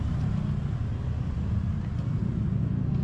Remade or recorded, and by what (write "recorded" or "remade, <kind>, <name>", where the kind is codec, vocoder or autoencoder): recorded